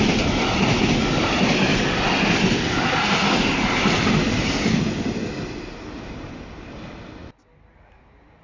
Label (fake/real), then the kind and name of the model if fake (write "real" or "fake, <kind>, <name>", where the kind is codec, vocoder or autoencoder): real